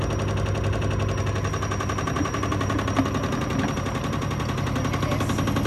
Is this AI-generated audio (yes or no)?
no